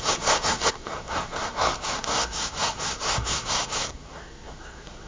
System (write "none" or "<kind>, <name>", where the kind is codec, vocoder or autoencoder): codec, SNAC